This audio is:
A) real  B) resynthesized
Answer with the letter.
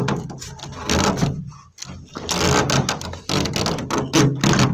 A